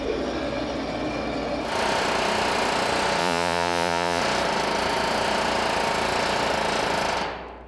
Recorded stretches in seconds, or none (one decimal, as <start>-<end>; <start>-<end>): 0.0-3.2; 4.2-7.7